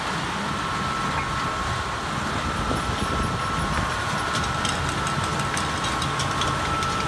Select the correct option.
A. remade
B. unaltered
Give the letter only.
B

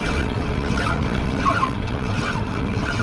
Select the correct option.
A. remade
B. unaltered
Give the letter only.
A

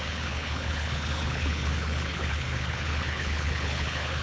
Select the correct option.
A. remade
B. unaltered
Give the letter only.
A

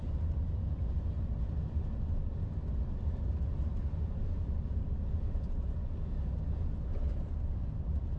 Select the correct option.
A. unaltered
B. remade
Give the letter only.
A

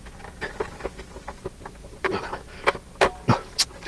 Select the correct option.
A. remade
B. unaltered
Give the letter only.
B